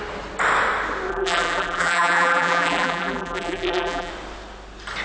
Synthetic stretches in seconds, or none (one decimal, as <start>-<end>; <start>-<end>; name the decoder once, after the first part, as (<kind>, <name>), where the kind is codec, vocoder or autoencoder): 1.1-4.1 (vocoder, BigVGAN v2)